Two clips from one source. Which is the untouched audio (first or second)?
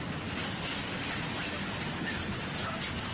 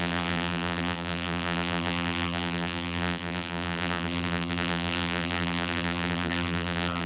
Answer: first